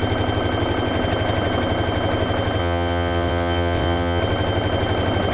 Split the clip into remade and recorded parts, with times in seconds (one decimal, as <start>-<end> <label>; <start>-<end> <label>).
0.0-2.6 recorded; 2.6-4.2 remade; 4.2-5.3 recorded